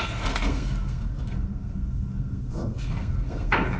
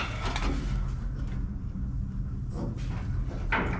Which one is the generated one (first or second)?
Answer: first